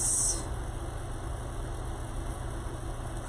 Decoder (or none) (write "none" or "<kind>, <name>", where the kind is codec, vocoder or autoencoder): none